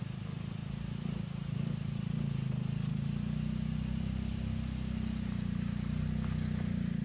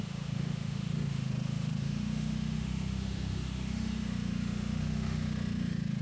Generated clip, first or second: second